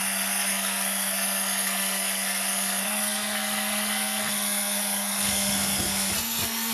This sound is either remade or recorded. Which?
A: remade